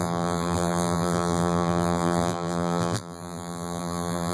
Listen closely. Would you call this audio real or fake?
fake